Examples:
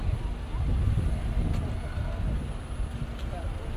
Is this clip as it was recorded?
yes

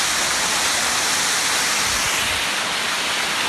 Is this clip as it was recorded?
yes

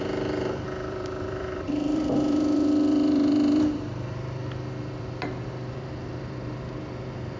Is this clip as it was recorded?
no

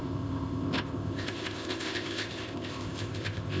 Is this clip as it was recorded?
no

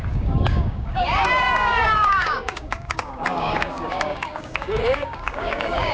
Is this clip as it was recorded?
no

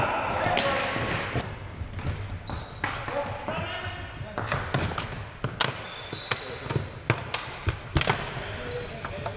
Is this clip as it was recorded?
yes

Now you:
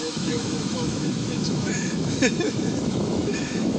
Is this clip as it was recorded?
no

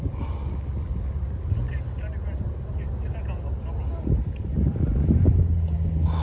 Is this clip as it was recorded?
yes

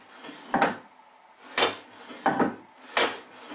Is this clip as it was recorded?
yes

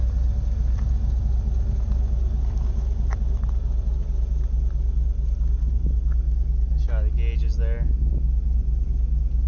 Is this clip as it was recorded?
yes